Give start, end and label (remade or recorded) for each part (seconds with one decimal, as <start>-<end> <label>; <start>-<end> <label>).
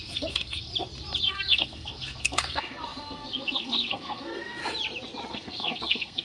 0.0-0.7 remade; 0.7-1.2 recorded; 1.2-4.6 remade; 4.6-5.3 recorded; 5.3-6.2 remade